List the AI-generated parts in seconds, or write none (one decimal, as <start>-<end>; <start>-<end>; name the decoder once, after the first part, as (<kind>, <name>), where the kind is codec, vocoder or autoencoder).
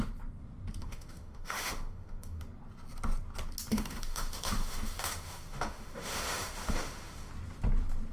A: 0.8-2.4 (autoencoder, DAC-VAE); 3.7-7.3